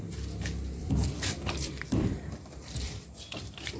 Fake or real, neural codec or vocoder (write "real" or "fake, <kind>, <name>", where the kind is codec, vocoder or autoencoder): fake, vocoder, BigVGAN v2